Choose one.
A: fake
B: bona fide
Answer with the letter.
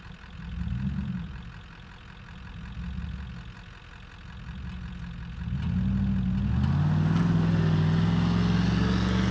B